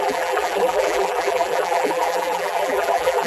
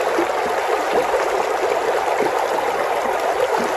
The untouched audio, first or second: second